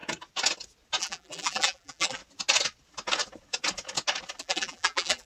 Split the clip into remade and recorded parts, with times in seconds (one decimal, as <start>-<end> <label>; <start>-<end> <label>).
0.0-1.0 recorded; 1.0-2.2 remade; 2.2-4.4 recorded; 4.4-5.2 remade